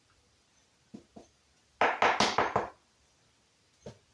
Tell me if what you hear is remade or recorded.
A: recorded